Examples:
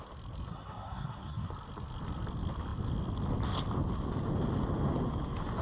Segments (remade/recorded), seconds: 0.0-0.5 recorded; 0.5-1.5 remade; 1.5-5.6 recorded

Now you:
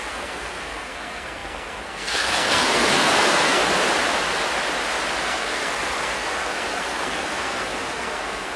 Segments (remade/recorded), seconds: 0.0-3.6 remade; 3.6-5.2 recorded; 5.2-8.6 remade

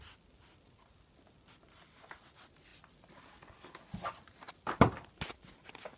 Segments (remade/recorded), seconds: 0.0-6.0 recorded